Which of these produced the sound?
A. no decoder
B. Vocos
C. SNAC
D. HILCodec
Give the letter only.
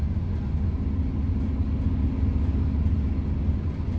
A